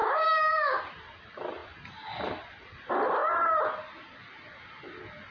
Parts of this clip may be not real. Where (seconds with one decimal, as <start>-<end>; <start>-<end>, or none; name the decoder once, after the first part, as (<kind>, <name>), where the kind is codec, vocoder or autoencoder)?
0.0-0.8 (codec, DAC)